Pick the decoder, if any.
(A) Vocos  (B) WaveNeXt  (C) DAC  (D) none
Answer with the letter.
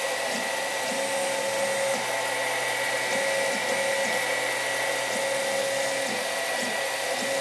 D